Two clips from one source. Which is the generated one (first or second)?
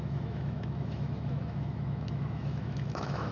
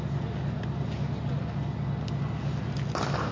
first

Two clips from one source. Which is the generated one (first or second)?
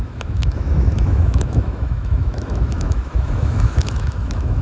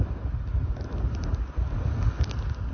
first